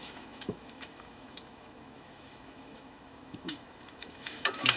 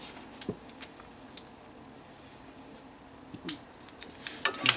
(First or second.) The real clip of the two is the second